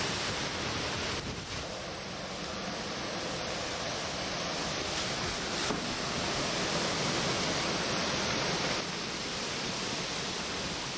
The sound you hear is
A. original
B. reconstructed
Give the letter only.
B